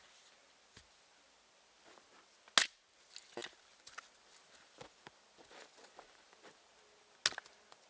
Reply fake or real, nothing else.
real